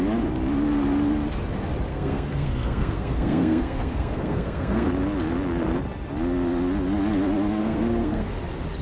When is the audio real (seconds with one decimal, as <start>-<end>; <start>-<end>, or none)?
0.0-1.9; 4.9-7.6; 8.3-8.8